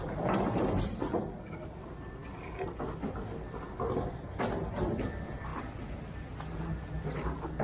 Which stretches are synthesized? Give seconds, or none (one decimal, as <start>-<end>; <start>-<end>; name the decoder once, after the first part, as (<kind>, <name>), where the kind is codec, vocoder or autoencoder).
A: none